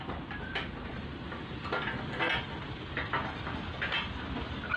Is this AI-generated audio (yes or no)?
no